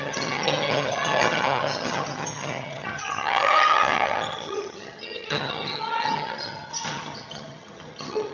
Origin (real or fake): fake